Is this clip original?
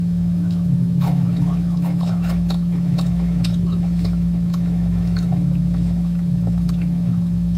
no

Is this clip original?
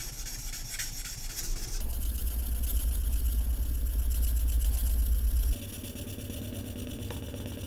yes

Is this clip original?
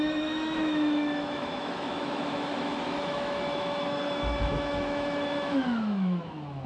no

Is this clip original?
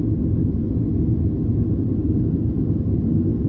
yes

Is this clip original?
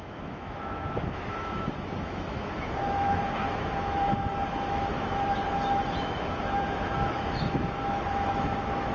no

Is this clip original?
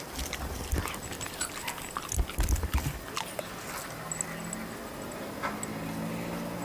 yes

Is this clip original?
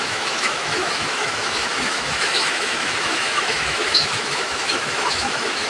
no